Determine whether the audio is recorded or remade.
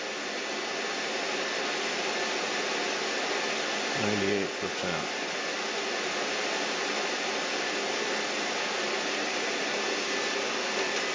recorded